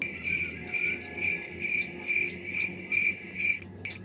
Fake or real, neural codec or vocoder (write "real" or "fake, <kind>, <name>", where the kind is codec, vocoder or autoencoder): real